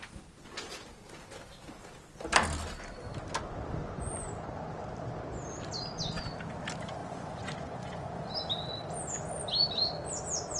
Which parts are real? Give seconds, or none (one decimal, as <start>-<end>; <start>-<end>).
0.0-3.8; 4.3-7.0; 8.3-10.6